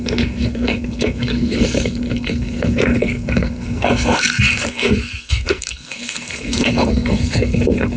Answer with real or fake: fake